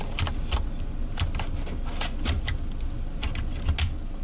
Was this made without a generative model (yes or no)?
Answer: yes